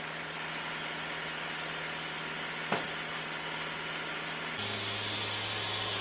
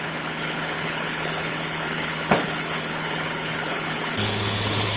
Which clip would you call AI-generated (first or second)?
second